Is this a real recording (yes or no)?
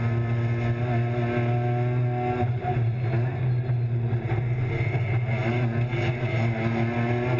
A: yes